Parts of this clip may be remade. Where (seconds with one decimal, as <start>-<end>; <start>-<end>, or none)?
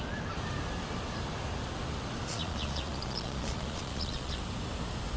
2.3-4.4